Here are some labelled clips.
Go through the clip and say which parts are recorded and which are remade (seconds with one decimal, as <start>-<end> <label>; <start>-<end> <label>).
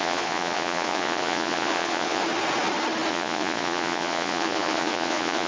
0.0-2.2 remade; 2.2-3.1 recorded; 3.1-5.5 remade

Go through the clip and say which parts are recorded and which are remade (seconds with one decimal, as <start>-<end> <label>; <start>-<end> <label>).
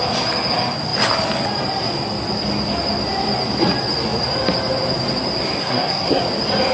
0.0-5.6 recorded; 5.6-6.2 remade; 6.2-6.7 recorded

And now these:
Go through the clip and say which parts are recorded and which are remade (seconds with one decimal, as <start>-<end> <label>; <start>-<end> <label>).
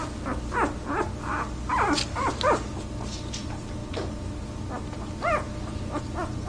0.0-6.5 recorded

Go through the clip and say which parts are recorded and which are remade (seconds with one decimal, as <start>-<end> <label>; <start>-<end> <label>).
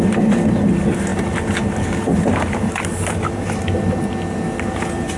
0.0-5.2 recorded